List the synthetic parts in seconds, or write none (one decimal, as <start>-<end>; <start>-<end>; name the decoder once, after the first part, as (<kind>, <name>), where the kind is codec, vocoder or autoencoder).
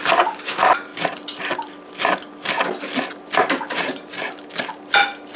none